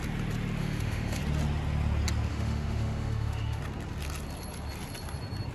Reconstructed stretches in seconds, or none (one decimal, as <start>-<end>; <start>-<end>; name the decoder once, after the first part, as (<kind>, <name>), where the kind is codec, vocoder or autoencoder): 0.6-1.2 (autoencoder, DAC-VAE); 2.3-3.6

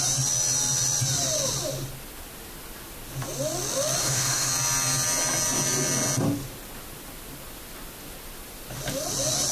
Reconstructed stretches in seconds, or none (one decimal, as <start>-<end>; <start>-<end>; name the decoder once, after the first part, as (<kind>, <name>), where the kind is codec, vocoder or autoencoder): 4.0-4.5 (autoencoder, DAC-VAE)

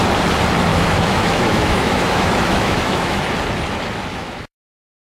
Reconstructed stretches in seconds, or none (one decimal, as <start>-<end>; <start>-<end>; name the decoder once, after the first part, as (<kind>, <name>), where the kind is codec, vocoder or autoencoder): 0.7-3.2 (autoencoder, DAC-VAE); 4.1-5.0

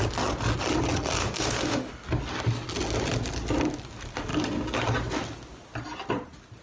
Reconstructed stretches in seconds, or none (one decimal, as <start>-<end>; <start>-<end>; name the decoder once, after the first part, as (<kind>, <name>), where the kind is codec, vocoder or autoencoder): 1.2-1.9 (autoencoder, DAC-VAE)

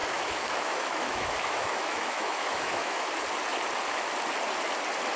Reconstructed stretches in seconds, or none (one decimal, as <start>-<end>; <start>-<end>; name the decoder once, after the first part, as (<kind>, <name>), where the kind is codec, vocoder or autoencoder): 0.0-3.1 (autoencoder, DAC-VAE)

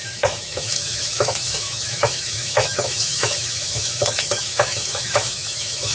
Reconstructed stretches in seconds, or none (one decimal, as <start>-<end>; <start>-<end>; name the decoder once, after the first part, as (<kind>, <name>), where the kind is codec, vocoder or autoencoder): 0.0-5.9 (autoencoder, DAC-VAE)